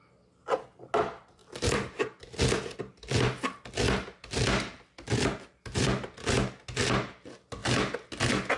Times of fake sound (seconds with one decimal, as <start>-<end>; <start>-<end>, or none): 1.4-6.6